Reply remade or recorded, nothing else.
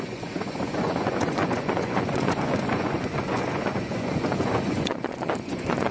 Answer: remade